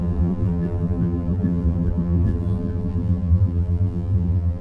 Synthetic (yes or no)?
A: yes